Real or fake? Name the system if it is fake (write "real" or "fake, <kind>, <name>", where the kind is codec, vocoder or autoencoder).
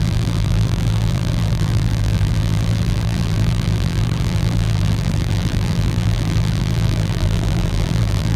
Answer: fake, vocoder, BigVGAN v2